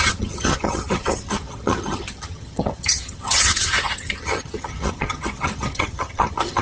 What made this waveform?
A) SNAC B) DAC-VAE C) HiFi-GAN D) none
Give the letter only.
C